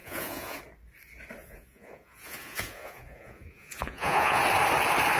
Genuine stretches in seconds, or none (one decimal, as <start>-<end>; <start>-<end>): 0.6-1.4; 4.4-5.2